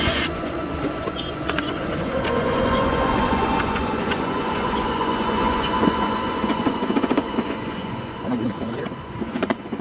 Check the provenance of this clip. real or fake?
fake